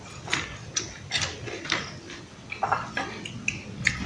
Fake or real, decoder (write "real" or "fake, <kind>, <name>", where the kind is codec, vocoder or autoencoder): real